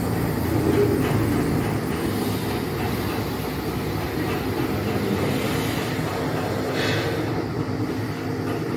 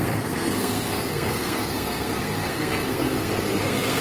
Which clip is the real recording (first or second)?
first